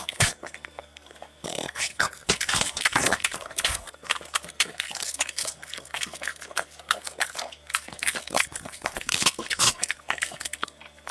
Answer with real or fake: fake